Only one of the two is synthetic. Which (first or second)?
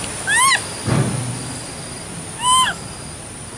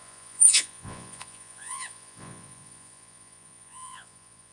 second